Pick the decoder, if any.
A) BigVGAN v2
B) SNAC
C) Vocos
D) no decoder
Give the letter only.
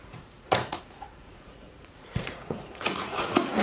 C